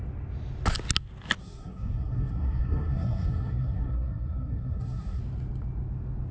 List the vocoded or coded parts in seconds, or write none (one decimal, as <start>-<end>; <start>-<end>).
1.4-5.2